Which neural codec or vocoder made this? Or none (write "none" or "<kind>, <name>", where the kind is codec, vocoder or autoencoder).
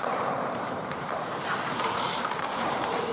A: vocoder, BigVGAN v2